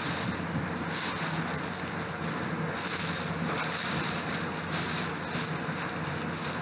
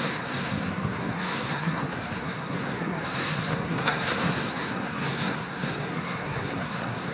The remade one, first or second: second